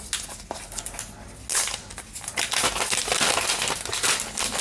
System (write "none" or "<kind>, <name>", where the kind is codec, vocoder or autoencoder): none